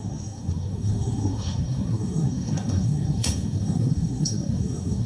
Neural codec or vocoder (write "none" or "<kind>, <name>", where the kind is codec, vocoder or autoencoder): codec, SNAC